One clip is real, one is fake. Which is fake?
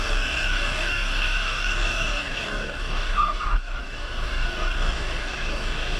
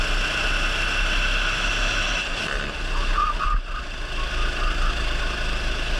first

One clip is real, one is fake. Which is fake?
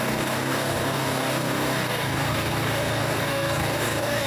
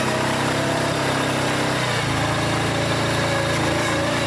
first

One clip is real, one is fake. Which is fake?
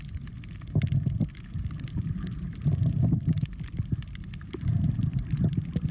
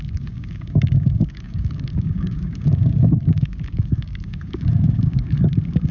second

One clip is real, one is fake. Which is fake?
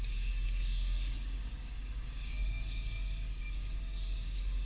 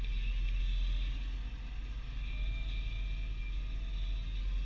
first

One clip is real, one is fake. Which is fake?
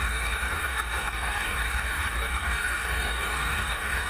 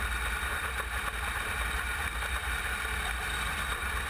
first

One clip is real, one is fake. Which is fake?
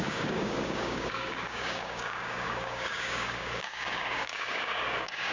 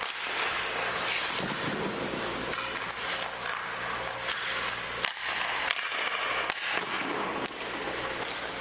first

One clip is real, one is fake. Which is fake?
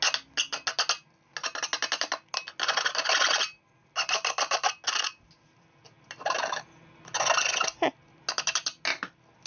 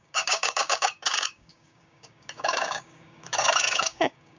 second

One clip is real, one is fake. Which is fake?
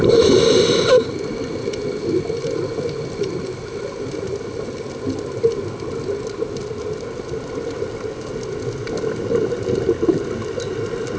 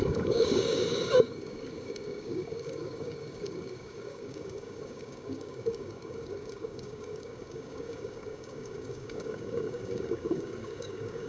second